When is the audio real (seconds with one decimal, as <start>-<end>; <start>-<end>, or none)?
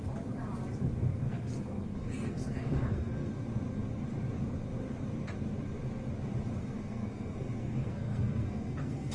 0.0-1.1; 3.3-6.6